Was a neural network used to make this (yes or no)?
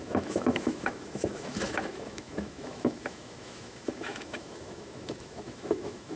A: yes